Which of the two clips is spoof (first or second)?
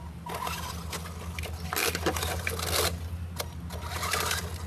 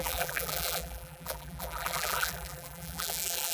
second